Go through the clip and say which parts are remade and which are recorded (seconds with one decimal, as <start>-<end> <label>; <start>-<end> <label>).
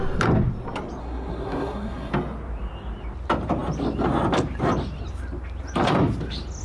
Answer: 0.0-1.0 recorded; 1.0-2.1 remade; 2.1-6.6 recorded